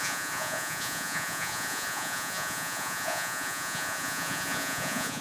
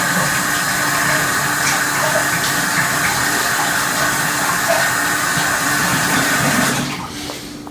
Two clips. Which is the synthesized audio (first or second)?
first